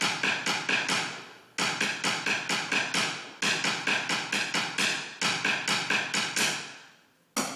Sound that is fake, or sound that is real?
real